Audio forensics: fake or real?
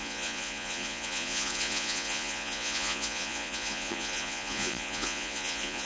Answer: fake